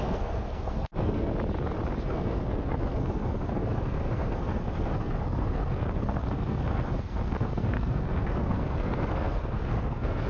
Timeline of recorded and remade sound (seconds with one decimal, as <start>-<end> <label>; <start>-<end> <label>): 0.0-1.3 remade; 1.3-2.0 recorded; 2.0-10.3 remade